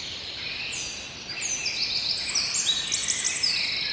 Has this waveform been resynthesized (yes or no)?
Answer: no